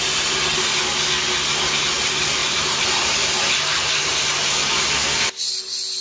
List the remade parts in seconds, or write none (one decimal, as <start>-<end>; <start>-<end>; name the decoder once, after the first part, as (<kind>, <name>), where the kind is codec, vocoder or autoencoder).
2.4-3.9 (vocoder, BigVGAN v2)